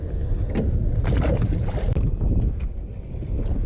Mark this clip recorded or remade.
recorded